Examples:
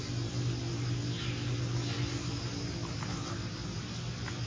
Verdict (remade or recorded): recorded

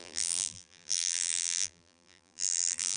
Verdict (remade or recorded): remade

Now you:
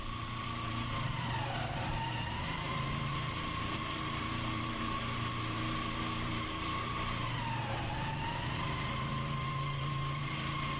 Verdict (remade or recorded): remade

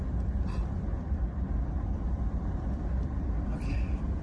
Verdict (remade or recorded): remade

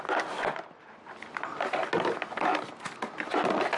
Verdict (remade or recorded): recorded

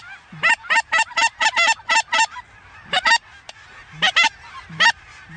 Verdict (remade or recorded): remade